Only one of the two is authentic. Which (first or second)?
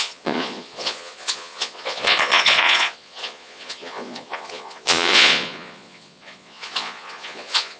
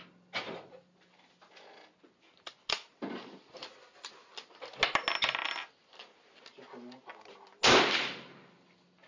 second